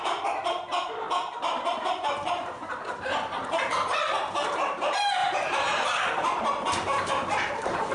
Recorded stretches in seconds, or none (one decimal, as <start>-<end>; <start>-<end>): none